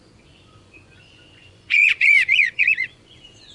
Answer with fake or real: fake